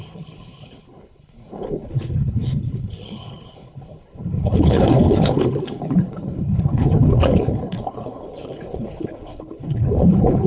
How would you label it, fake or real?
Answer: fake